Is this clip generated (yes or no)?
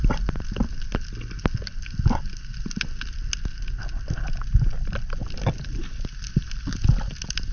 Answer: no